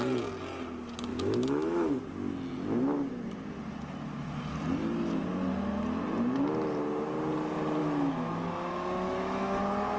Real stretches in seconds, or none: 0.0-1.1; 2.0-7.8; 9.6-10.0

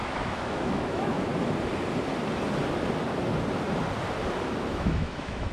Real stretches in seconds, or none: 1.3-4.6